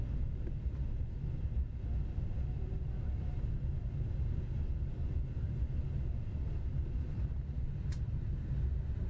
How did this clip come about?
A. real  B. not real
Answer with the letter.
A